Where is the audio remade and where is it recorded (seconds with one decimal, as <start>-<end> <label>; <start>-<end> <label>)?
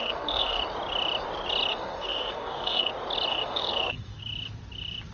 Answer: 0.0-0.6 remade; 0.6-1.7 recorded; 1.7-2.9 remade; 2.9-3.3 recorded; 3.3-4.2 remade; 4.2-5.1 recorded